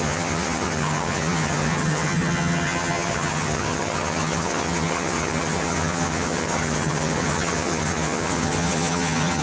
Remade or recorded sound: remade